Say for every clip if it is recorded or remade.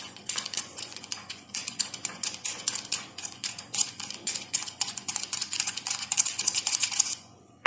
remade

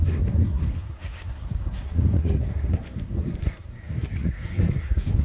remade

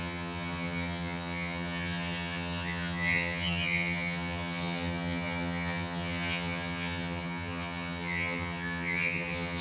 remade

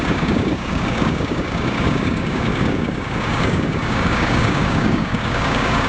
remade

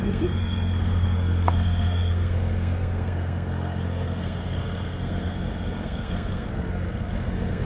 remade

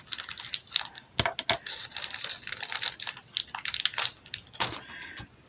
recorded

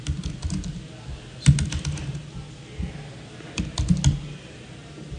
recorded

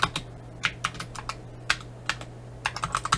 recorded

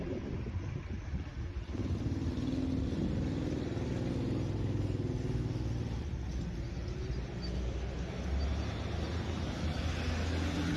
recorded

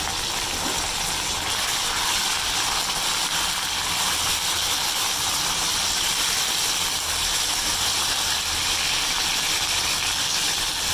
recorded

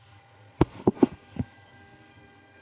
remade